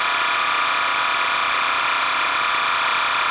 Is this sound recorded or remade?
remade